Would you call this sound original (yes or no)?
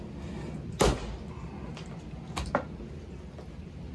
yes